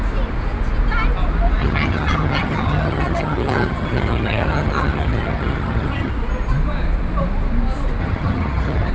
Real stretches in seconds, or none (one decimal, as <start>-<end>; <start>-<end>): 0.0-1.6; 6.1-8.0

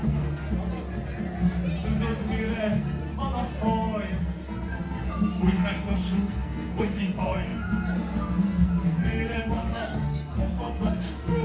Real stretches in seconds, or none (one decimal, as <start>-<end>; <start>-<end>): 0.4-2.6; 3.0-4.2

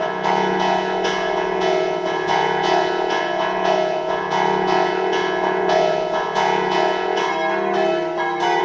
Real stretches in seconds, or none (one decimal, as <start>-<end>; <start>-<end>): 7.3-8.6

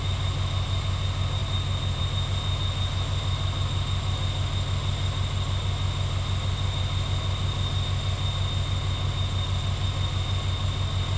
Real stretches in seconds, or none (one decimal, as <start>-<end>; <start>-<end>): 0.0-11.2

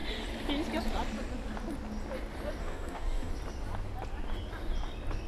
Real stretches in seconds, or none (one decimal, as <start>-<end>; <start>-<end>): 0.0-2.6; 3.3-5.3